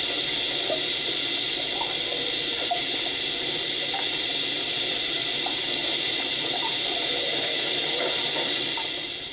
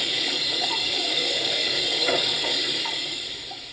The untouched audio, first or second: first